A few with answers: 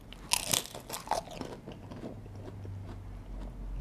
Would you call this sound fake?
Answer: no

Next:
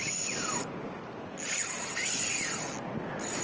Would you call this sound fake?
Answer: no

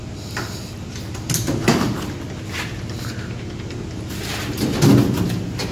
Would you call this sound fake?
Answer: no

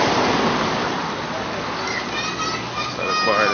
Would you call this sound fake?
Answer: no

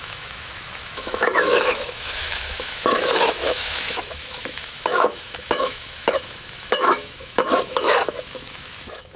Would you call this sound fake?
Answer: yes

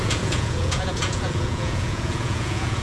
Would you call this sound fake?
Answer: yes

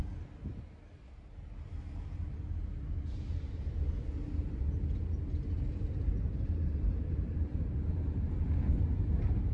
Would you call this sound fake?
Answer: no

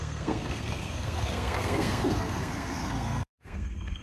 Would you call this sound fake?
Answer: yes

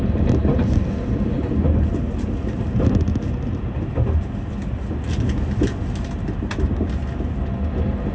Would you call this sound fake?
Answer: no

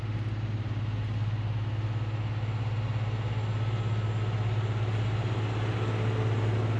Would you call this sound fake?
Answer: no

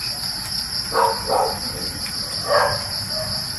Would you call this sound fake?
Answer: no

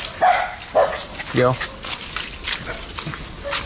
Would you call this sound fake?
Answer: no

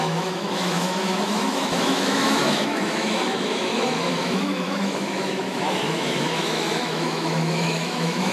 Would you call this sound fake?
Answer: yes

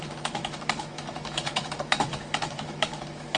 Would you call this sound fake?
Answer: yes